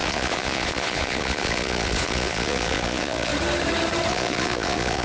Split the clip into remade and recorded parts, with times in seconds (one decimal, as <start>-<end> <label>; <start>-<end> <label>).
0.0-3.3 remade; 3.3-4.1 recorded; 4.1-5.0 remade